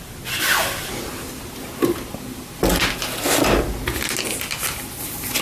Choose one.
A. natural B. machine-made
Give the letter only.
A